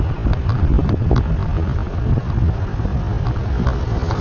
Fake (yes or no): no